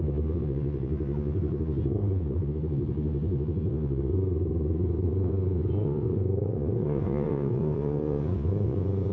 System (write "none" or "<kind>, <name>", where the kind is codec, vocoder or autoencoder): vocoder, Vocos